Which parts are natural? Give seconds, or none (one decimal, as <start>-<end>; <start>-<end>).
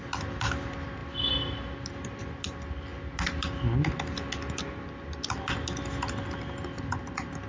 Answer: 0.0-7.5